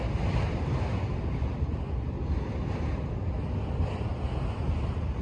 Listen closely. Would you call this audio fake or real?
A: real